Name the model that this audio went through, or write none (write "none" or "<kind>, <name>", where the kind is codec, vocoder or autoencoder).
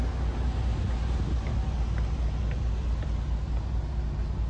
none